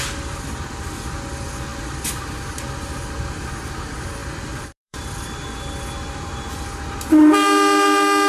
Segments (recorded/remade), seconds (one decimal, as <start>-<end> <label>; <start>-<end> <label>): 0.0-1.7 recorded; 1.7-2.2 remade; 2.2-4.2 recorded; 4.2-6.3 remade; 6.3-8.3 recorded